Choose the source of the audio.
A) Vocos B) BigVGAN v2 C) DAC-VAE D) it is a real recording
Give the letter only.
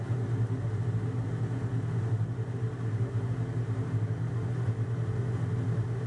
D